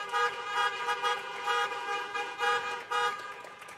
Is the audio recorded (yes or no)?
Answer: no